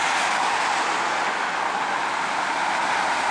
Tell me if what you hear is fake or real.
real